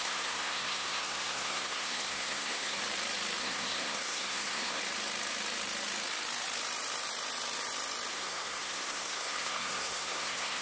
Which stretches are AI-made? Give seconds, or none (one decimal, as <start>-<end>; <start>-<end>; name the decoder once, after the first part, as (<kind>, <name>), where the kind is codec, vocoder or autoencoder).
0.0-2.8 (codec, SNAC); 3.4-4.8; 8.1-10.6